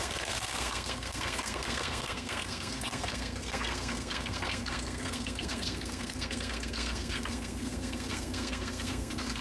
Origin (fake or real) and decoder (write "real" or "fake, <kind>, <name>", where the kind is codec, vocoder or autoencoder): fake, codec, SNAC